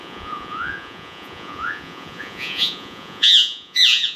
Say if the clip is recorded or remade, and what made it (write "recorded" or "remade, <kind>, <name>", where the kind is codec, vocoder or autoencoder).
remade, vocoder, Vocos